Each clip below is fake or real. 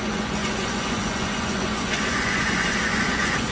fake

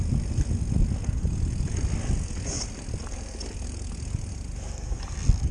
real